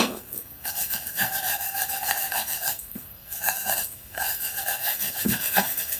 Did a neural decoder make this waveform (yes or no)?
yes